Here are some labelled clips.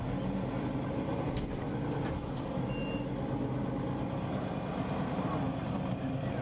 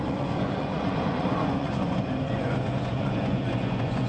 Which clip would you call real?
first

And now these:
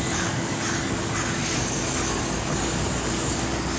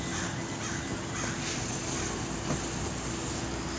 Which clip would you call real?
second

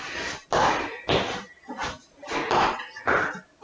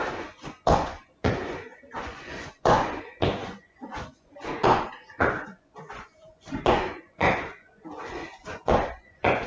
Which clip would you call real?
first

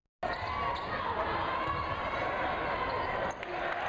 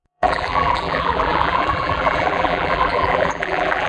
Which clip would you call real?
first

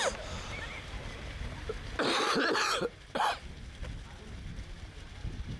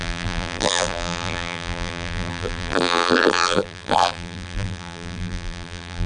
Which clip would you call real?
first